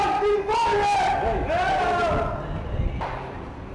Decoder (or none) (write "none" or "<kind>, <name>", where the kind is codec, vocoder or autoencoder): none